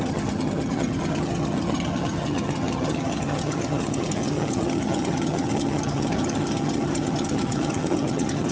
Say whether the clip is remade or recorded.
remade